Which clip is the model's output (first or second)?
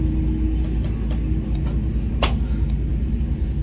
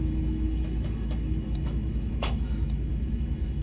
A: second